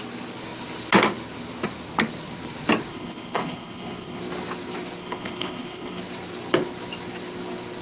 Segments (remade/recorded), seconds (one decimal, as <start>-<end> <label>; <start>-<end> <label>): 0.0-2.9 recorded; 2.9-4.2 remade; 4.2-5.0 recorded; 5.0-6.0 remade; 6.0-7.8 recorded